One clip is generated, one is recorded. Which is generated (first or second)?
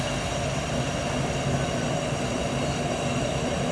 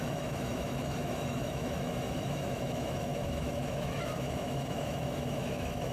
second